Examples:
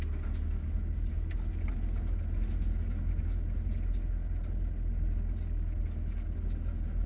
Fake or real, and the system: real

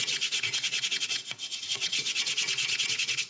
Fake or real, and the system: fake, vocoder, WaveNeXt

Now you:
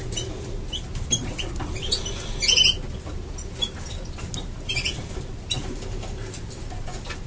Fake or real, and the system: real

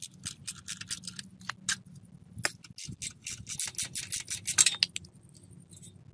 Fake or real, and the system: real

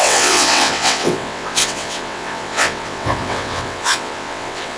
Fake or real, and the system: fake, vocoder, WaveNeXt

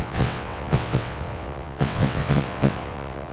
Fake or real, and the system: fake, vocoder, WaveNeXt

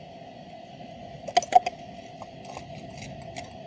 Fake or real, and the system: real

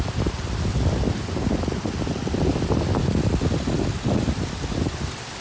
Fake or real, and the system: real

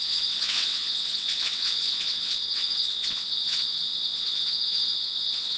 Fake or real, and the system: fake, vocoder, WaveNeXt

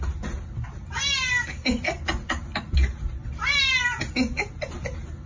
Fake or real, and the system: real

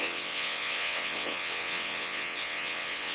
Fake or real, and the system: fake, vocoder, WaveNeXt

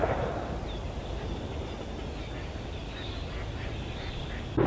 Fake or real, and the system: real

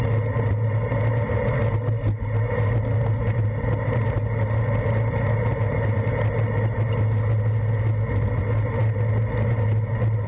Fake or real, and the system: real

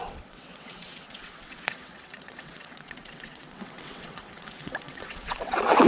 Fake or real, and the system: fake, vocoder, WaveNeXt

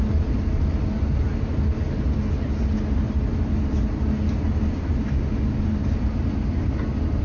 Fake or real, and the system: real